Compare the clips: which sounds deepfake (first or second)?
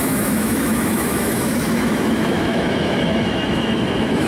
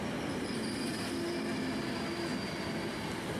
first